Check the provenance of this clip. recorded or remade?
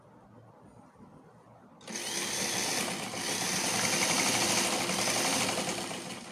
recorded